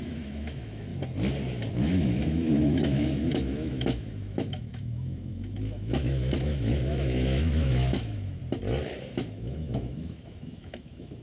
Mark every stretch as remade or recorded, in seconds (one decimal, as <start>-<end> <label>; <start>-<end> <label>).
0.0-0.9 remade; 0.9-1.7 recorded; 1.7-8.4 remade; 8.4-9.1 recorded; 9.1-11.2 remade